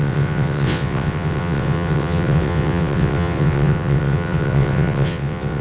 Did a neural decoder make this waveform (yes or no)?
yes